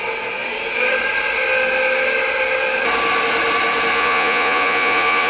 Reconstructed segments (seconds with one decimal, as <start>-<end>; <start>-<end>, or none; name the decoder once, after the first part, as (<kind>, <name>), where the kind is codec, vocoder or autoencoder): 3.9-5.3 (vocoder, Vocos)